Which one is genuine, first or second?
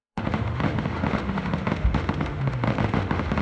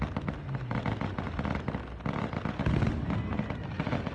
second